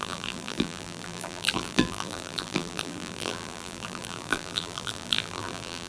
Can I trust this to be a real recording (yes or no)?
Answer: no